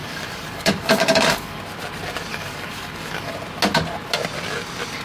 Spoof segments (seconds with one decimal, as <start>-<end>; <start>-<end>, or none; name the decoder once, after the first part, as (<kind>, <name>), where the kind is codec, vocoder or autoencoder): 0.0-1.6 (codec, DAC); 2.3-3.3